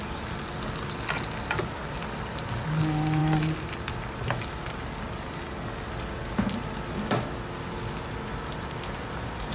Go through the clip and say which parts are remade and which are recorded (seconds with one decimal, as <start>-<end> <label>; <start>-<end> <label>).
0.0-9.5 recorded